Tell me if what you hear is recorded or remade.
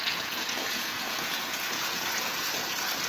remade